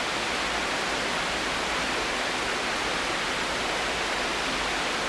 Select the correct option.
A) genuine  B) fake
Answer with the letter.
A